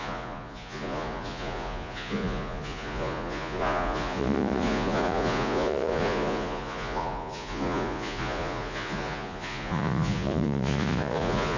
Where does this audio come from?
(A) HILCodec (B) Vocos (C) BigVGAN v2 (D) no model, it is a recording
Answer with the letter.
B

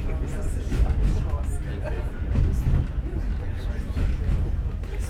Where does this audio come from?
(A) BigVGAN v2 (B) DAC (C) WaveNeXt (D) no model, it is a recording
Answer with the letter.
D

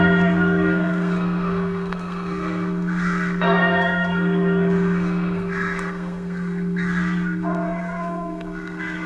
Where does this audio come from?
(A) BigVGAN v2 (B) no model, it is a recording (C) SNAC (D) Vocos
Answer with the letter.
C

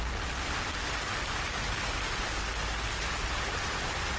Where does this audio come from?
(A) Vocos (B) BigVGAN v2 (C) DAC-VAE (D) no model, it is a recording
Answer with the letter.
D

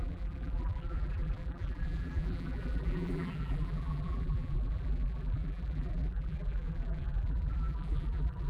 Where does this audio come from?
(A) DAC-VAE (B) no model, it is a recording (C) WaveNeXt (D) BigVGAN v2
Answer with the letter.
D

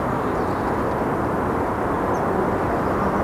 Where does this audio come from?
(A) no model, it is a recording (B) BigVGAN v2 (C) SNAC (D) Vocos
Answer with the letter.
A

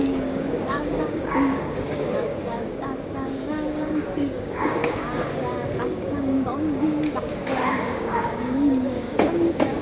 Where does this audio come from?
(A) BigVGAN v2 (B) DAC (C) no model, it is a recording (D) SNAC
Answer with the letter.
B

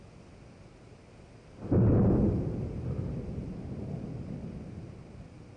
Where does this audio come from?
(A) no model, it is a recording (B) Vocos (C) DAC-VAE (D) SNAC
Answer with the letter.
A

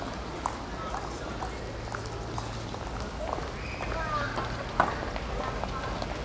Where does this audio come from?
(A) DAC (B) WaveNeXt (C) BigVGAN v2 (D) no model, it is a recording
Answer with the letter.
D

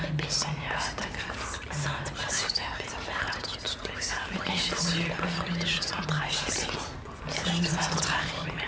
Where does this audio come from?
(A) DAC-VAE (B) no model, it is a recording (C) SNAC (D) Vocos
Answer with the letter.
B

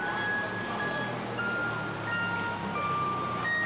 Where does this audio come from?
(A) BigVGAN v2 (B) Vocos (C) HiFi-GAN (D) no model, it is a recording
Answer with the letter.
D